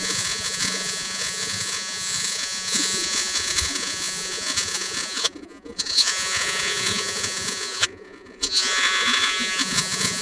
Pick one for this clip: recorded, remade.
remade